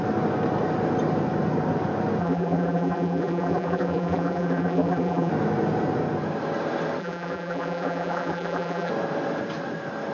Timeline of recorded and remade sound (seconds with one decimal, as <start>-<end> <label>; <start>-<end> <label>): 0.0-2.2 recorded; 2.2-5.3 remade; 5.3-7.0 recorded; 7.0-8.9 remade; 8.9-10.1 recorded